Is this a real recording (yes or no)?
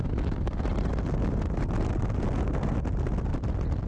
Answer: yes